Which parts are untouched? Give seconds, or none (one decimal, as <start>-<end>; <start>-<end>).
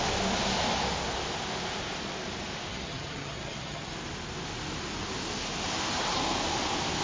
0.0-2.7; 3.9-7.0